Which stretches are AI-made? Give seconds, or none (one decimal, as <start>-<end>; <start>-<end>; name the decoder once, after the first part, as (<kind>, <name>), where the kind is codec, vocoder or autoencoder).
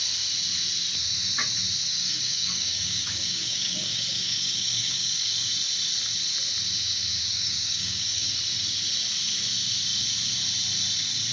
1.9-5.5 (codec, DAC); 7.3-8.3